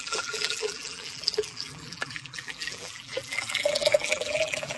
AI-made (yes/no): yes